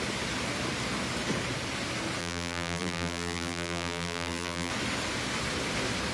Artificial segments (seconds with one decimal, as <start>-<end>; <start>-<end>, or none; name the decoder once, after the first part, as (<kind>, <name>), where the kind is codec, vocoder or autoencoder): 2.2-4.7 (vocoder, BigVGAN v2)